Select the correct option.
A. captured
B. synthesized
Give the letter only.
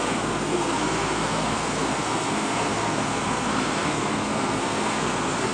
B